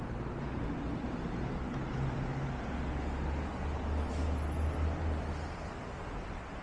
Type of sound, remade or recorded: recorded